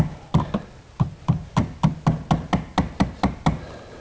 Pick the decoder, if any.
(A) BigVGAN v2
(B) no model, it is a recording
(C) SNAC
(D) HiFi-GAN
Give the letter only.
B